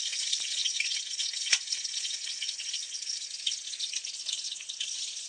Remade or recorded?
remade